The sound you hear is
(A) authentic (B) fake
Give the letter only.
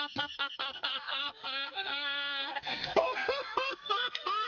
B